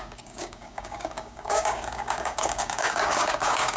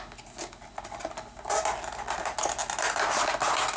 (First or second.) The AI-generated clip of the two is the first